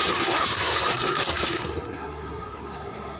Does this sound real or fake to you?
fake